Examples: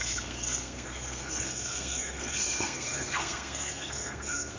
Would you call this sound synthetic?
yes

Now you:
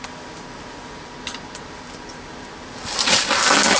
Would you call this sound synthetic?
no